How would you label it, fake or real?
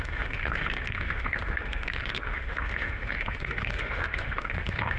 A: fake